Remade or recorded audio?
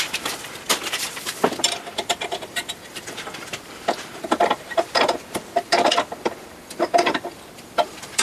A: remade